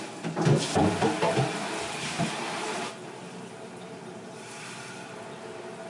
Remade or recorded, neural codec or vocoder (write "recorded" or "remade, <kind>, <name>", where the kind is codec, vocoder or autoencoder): remade, vocoder, BigVGAN v2